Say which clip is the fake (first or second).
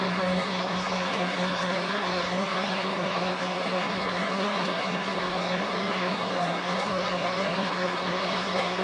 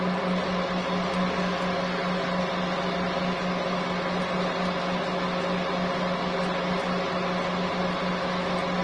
first